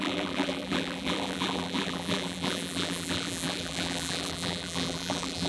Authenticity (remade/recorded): remade